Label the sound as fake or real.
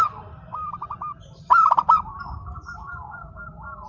fake